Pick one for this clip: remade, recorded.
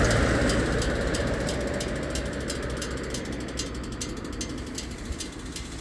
recorded